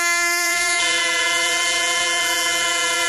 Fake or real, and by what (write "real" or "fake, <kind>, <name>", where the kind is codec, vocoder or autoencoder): fake, vocoder, BigVGAN v2